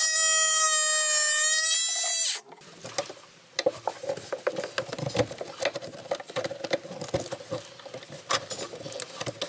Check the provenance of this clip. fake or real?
real